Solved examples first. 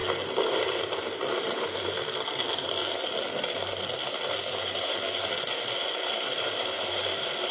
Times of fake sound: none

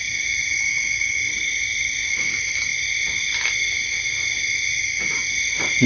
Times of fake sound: none

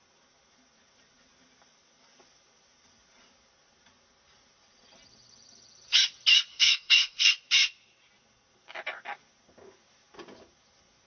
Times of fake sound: 6.5-7.3 (codec, SNAC)

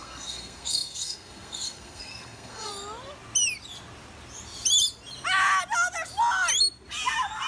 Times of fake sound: 0.0-2.7 (codec, SNAC)

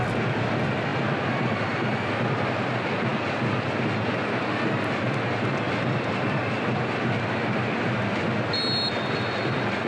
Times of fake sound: none

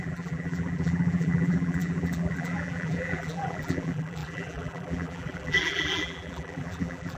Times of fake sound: 0.0-7.2 (vocoder, BigVGAN v2)